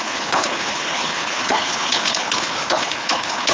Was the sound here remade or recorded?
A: remade